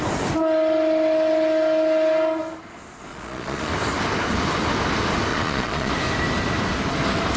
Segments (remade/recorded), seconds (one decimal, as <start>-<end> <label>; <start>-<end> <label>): 0.0-3.1 recorded; 3.1-3.7 remade; 3.7-5.3 recorded; 5.3-5.9 remade; 5.9-7.4 recorded